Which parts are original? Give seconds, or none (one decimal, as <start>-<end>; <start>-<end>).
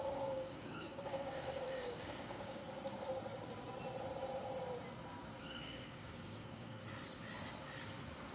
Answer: 2.6-5.4; 6.8-8.3